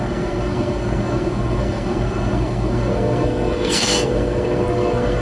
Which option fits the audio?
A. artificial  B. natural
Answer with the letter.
A